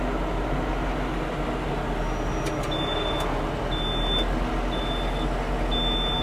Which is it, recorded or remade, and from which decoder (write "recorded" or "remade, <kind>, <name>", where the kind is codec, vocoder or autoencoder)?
recorded